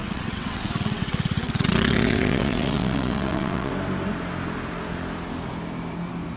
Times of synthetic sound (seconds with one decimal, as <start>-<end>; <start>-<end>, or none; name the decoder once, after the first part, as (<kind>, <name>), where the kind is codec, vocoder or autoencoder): 0.0-3.7 (vocoder, WaveNeXt)